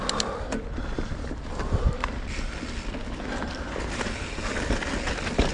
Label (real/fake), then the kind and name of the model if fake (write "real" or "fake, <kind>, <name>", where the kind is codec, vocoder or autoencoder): real